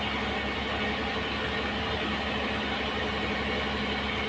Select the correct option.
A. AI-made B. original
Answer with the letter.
B